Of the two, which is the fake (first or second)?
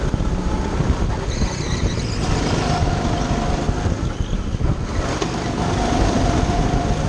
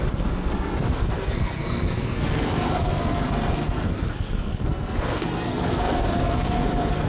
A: second